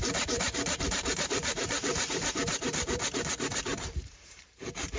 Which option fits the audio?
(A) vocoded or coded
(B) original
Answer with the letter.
A